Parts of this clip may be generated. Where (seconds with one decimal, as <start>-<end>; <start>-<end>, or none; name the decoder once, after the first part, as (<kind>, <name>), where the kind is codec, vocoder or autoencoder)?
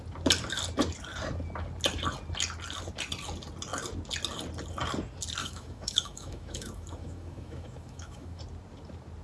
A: 5.4-8.4 (autoencoder, DAC-VAE)